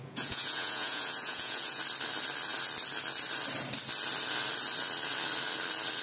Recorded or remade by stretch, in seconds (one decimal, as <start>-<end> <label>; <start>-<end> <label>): 0.0-1.8 remade; 1.8-6.0 recorded